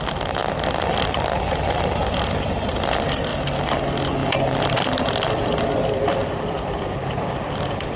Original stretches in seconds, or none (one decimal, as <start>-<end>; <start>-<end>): 0.4-1.8; 3.3-3.8; 4.2-5.0